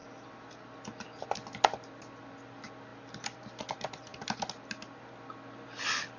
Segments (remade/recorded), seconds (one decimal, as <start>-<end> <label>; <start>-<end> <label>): 0.0-6.2 recorded